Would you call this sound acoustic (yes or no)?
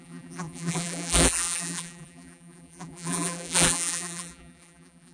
no